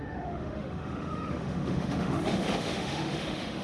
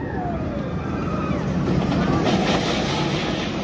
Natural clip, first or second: second